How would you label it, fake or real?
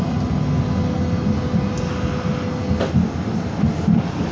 real